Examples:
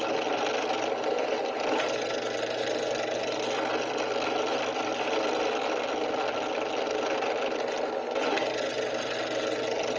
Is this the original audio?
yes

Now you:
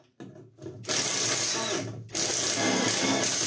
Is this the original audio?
yes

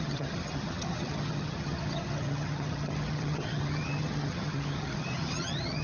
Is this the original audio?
no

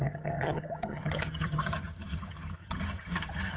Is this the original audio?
no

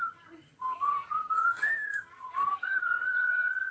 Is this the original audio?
no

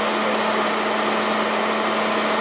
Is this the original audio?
yes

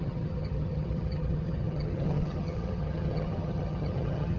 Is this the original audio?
no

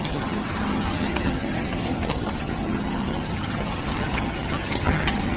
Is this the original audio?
no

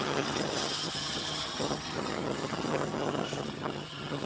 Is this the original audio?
no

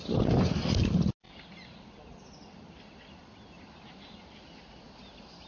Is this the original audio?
yes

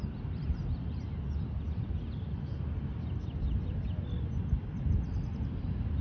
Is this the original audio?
yes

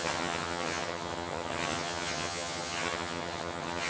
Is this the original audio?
no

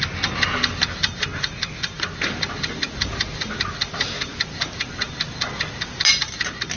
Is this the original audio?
yes